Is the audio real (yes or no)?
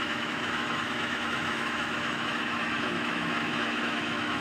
no